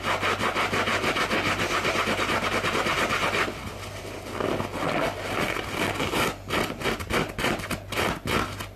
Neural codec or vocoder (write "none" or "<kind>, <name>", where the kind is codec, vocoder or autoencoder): none